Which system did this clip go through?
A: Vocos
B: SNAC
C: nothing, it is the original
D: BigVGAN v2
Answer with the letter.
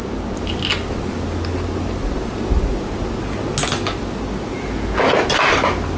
C